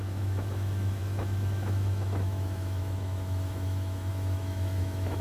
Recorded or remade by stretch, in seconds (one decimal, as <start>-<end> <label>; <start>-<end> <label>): 0.0-5.2 remade